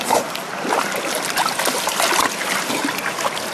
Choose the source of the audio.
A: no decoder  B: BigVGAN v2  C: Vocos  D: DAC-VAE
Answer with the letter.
A